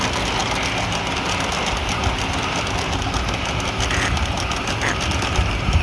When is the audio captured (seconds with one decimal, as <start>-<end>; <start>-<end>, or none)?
0.0-5.8